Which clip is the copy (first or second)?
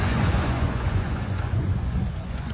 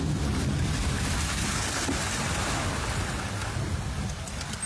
first